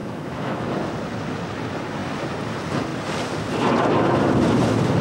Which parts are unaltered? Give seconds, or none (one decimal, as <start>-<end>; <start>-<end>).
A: 0.7-5.0